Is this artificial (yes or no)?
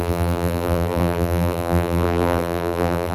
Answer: yes